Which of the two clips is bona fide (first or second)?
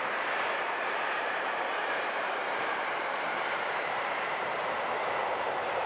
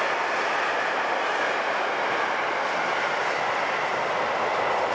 second